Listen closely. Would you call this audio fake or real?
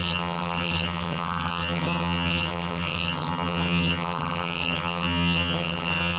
fake